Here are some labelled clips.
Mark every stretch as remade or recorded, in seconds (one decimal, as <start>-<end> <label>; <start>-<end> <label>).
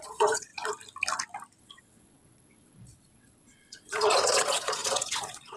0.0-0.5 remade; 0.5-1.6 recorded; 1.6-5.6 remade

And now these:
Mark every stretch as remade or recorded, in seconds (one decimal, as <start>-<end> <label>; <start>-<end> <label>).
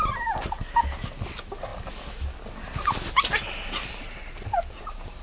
0.0-5.2 recorded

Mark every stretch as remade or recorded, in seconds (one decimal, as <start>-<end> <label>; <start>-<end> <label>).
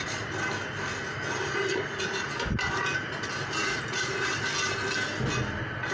0.0-3.6 recorded; 3.6-4.3 remade; 4.3-5.9 recorded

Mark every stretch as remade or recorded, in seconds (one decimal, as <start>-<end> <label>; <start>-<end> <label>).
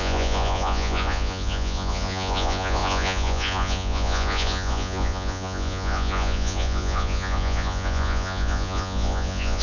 0.0-9.6 remade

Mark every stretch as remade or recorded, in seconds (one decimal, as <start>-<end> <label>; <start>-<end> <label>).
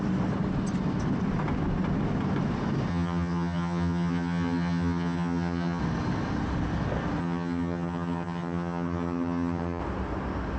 0.0-2.9 recorded; 2.9-5.8 remade; 5.8-7.2 recorded; 7.2-9.8 remade; 9.8-10.6 recorded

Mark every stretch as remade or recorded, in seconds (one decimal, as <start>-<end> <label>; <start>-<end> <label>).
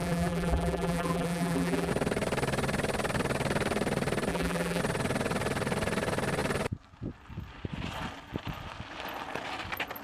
0.0-1.9 remade; 1.9-4.3 recorded; 4.3-4.8 remade; 4.8-10.0 recorded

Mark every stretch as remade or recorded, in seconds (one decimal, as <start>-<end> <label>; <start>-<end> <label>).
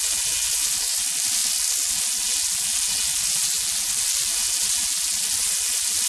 0.0-6.1 recorded